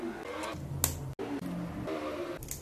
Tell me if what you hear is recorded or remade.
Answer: recorded